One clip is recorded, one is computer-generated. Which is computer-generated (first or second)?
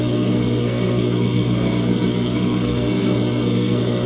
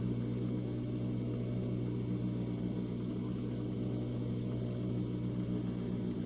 first